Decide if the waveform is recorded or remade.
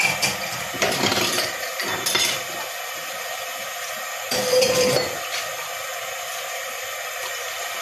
remade